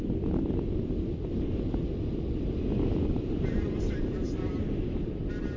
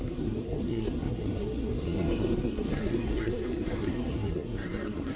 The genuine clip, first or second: first